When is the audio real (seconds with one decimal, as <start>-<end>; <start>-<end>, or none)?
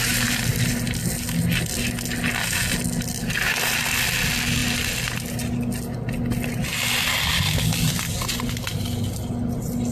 0.0-9.9